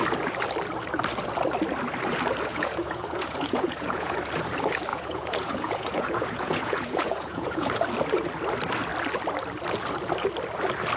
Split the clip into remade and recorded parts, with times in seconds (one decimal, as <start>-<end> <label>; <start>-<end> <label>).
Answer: 0.0-2.5 recorded; 2.5-4.2 remade; 4.2-4.9 recorded; 4.9-7.8 remade; 7.8-11.0 recorded